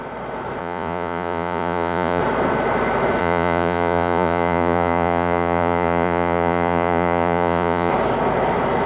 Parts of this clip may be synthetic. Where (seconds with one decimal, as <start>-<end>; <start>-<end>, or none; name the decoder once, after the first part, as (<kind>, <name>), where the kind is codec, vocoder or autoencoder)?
0.6-2.2 (vocoder, Vocos); 3.2-7.9

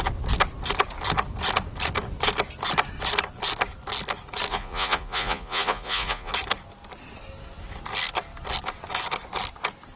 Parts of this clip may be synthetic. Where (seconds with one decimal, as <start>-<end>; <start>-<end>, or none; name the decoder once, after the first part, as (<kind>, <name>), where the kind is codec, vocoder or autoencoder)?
4.5-6.3 (vocoder, Vocos)

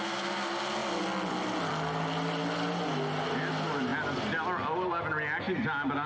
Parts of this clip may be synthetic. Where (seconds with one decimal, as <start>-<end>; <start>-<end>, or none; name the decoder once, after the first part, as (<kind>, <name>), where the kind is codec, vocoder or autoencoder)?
none

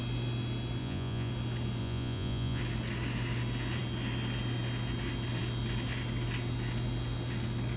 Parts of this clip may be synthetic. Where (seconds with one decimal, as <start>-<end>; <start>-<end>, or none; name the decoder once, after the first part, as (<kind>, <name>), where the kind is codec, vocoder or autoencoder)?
0.8-1.3 (vocoder, Vocos); 1.8-2.6

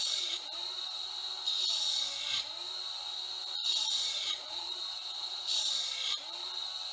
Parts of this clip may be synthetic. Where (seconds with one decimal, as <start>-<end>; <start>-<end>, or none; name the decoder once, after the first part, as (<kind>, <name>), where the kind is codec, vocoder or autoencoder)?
3.6-5.7 (vocoder, Vocos)